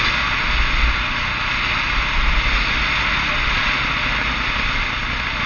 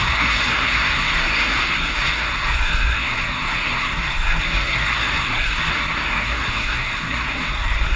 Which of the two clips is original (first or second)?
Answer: first